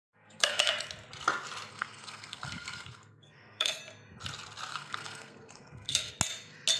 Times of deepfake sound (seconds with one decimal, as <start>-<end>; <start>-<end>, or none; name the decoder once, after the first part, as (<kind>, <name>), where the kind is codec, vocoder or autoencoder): 0.0-0.7 (codec, SNAC); 1.7-3.8; 4.7-6.1